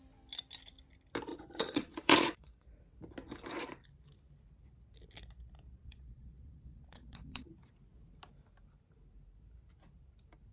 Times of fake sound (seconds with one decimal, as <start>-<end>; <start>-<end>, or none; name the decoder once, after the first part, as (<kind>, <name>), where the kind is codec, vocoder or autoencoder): 1.3-2.8 (vocoder, Vocos); 5.8-7.5